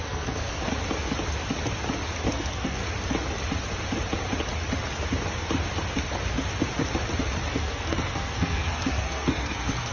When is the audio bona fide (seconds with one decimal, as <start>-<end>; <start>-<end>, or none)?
0.7-2.3; 2.8-7.5